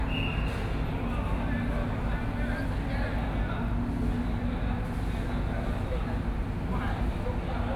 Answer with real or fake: real